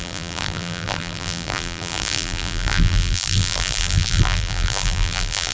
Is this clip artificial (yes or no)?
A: yes